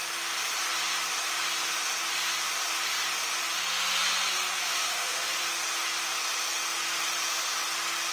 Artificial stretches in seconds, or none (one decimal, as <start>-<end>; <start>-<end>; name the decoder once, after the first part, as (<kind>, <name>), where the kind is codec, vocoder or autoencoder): 4.6-5.4 (autoencoder, DAC-VAE)